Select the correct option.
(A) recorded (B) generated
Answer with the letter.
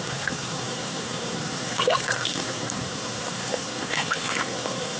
B